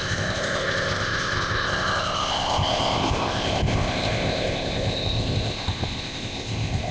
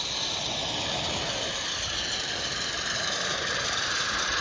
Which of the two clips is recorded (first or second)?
second